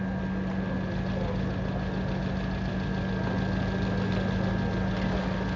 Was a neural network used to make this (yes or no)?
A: no